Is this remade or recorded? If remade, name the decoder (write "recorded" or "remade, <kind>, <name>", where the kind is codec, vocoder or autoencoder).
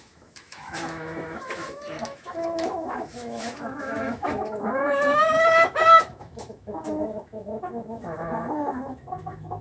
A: remade, autoencoder, DAC-VAE